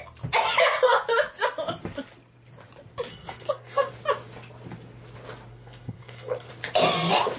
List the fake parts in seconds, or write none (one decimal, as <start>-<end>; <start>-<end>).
3.1-3.9; 5.5-6.5